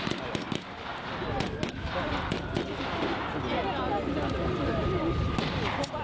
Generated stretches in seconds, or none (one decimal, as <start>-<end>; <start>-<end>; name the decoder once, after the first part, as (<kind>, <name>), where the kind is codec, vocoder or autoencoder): none